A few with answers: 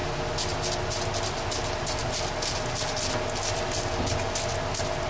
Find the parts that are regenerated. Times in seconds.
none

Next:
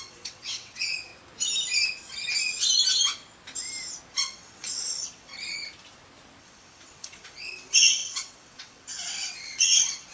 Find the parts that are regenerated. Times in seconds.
0.0-1.1; 4.1-5.3; 6.4-10.1